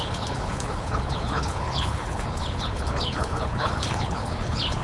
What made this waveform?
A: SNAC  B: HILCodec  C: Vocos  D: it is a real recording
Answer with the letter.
B